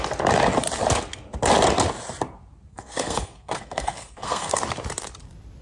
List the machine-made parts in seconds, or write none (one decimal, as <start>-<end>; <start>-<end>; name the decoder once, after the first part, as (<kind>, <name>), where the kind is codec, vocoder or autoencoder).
2.7-4.6 (codec, SNAC)